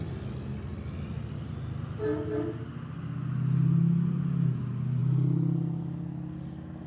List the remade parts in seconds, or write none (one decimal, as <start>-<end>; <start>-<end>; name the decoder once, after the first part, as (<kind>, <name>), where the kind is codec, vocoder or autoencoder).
none